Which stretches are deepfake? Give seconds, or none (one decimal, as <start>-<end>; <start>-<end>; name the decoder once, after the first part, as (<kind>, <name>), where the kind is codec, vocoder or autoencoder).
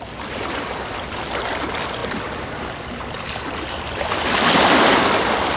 none